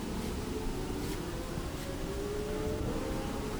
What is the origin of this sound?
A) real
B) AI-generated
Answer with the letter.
A